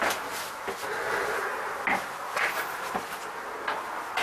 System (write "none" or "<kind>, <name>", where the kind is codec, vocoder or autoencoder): none